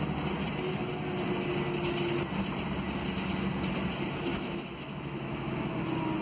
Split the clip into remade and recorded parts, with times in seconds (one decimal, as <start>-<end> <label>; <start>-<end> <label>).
0.0-4.3 recorded; 4.3-5.8 remade; 5.8-6.2 recorded